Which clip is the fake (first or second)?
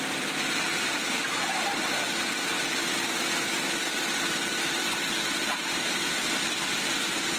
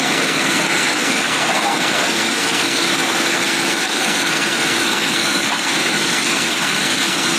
second